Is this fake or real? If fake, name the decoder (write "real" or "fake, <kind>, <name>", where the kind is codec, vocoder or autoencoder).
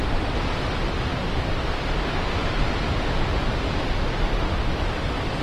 real